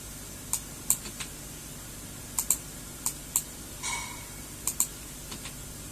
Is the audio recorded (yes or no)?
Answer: yes